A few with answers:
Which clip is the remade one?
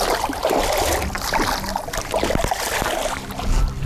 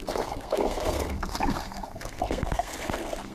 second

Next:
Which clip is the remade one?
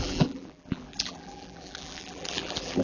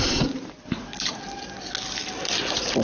first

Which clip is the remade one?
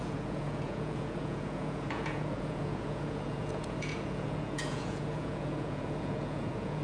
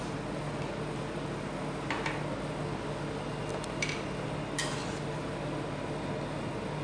first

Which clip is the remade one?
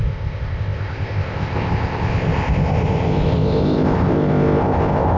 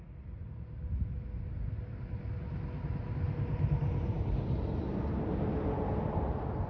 first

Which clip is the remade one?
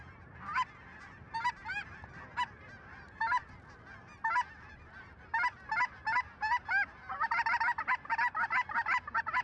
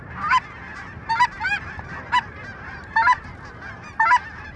second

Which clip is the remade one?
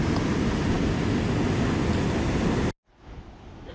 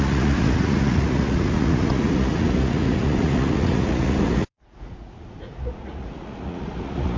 second